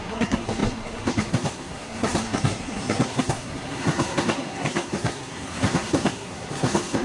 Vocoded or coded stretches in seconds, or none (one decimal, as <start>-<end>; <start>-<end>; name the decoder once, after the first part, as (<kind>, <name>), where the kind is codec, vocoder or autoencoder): 0.0-7.0 (codec, SNAC)